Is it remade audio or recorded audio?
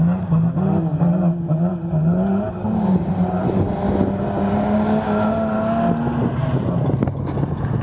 recorded